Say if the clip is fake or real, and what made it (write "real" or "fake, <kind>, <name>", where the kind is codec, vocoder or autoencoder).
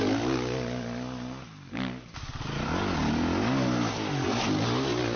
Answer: real